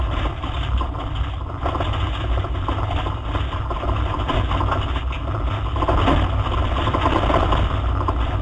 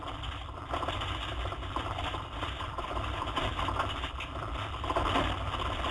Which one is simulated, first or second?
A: second